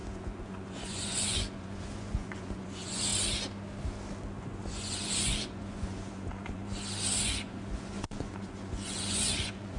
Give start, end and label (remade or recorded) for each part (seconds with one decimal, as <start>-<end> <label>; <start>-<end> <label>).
0.0-3.1 remade; 3.1-4.4 recorded; 4.4-6.6 remade; 6.6-7.2 recorded; 7.2-9.8 remade